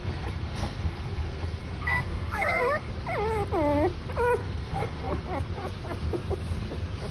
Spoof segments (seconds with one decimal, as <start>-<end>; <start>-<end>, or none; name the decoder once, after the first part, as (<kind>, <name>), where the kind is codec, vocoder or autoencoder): 0.0-2.9 (codec, SNAC); 4.4-5.2